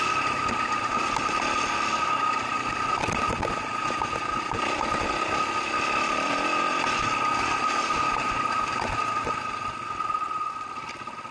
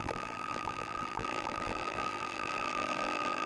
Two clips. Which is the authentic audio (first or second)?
first